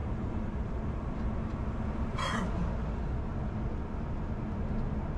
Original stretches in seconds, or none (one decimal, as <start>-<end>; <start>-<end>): 0.7-5.2